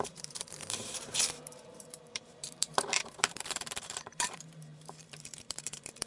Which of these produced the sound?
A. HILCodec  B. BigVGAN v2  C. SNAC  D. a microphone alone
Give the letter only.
B